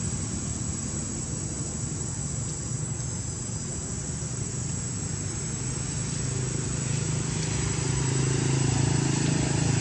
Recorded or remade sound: recorded